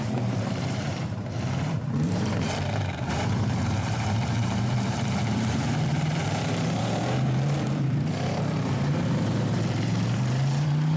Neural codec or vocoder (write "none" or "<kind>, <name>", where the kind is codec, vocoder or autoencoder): vocoder, BigVGAN v2